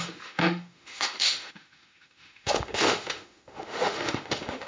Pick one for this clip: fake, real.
fake